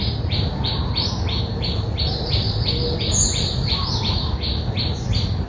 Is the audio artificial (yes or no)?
no